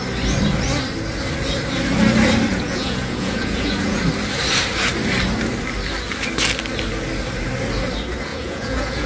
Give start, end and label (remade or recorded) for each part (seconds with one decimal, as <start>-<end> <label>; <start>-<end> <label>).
0.0-2.5 recorded; 2.5-4.0 remade; 4.0-8.3 recorded; 8.3-9.1 remade